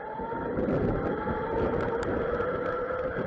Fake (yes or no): no